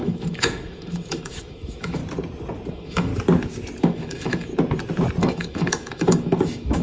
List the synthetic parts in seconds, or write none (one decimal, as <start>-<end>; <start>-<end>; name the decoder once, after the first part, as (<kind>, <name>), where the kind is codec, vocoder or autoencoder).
0.0-2.0 (autoencoder, DAC-VAE); 2.7-3.1; 3.8-4.5; 5.2-6.8